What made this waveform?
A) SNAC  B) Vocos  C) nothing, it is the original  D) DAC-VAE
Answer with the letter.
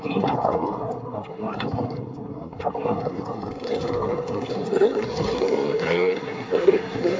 A